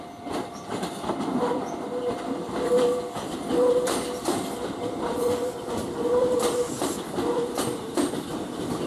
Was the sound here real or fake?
fake